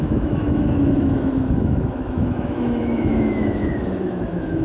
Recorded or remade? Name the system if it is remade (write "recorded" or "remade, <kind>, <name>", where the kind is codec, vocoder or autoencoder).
remade, autoencoder, DAC-VAE